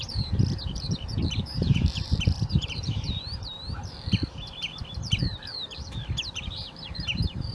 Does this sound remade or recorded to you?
remade